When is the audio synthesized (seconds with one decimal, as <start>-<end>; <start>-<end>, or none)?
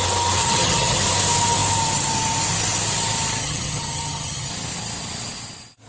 0.4-1.0; 3.4-4.5